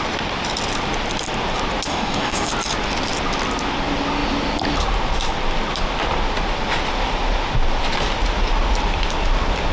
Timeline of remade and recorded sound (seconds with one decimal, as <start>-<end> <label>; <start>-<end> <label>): 0.0-1.9 recorded; 1.9-2.5 remade; 2.5-9.7 recorded